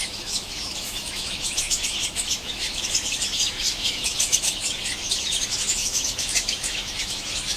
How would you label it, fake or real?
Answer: fake